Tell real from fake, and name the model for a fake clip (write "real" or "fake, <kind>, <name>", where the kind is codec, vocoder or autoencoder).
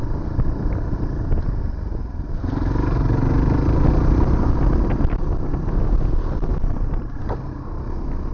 fake, vocoder, BigVGAN v2